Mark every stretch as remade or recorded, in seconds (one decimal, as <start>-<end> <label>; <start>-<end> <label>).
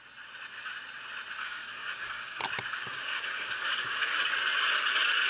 0.0-1.4 recorded; 1.4-2.4 remade; 2.4-2.8 recorded; 2.8-4.2 remade; 4.2-5.3 recorded